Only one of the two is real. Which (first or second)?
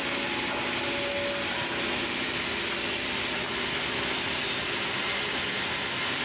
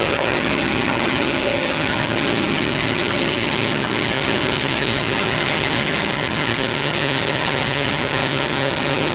first